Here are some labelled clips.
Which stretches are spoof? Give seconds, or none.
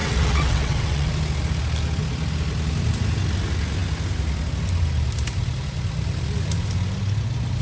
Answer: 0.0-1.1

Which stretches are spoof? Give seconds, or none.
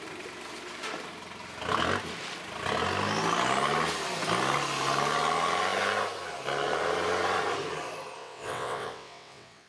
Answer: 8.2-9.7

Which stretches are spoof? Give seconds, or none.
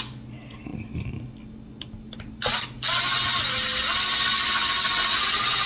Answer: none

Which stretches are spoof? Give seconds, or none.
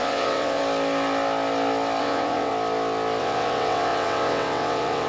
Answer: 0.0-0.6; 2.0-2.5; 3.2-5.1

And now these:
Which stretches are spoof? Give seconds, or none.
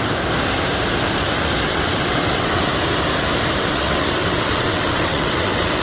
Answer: 1.7-2.6; 3.6-5.8